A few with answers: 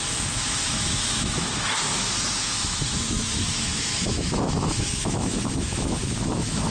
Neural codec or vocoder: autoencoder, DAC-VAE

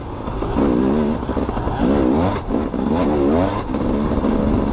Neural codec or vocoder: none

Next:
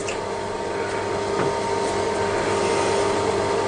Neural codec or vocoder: none